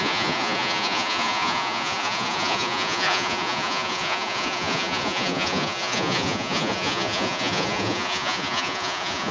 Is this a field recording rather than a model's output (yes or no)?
no